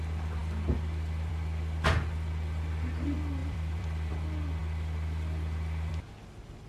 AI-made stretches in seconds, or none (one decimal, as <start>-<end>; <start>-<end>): 3.4-4.1